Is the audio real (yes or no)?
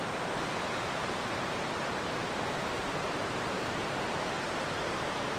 no